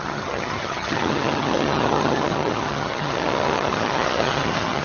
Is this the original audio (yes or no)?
no